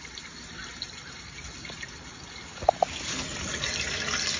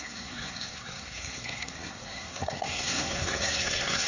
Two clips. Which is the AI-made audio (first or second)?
second